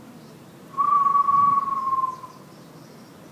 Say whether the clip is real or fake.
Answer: real